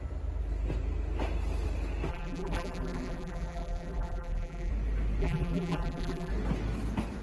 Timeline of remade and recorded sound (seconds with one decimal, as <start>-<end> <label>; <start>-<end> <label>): 0.0-2.1 recorded; 2.1-4.7 remade; 4.7-5.2 recorded; 5.2-6.3 remade; 6.3-7.2 recorded